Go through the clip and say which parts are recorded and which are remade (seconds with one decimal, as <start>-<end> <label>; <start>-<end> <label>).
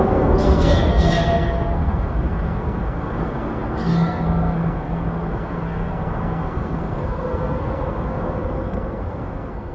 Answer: 0.0-9.7 remade